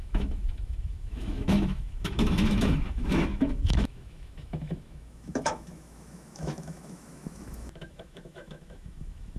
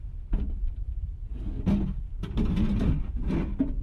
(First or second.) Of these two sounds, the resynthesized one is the first